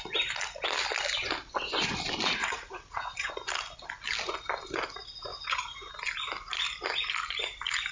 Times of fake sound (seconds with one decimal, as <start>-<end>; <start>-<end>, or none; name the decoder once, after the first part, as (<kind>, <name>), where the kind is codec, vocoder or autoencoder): 2.4-3.3 (vocoder, Vocos); 5.3-5.9

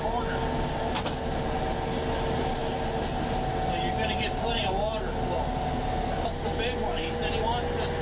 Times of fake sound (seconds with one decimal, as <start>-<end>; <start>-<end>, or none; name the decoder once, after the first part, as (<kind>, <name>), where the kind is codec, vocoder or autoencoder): none